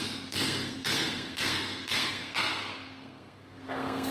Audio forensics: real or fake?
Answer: fake